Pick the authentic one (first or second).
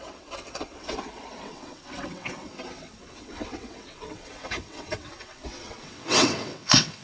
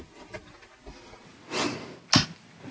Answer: second